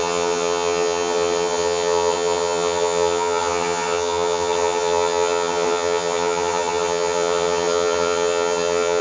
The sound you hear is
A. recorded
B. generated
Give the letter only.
B